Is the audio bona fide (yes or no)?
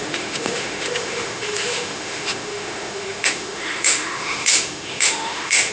no